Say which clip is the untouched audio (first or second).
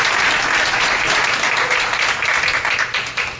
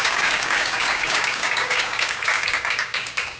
first